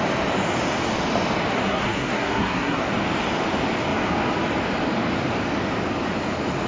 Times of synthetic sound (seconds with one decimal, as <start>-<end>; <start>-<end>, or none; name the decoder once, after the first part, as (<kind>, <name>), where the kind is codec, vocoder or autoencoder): 1.5-2.9 (codec, SNAC)